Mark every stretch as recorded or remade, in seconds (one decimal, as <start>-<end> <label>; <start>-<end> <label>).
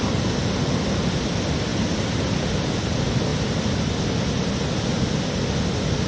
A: 0.0-6.1 recorded